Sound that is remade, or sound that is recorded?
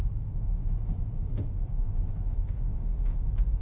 remade